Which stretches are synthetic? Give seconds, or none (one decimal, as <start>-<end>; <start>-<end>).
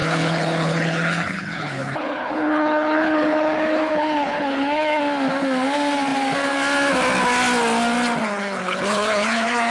0.0-5.0; 8.2-9.7